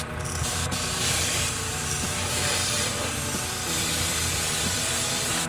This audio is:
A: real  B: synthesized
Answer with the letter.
B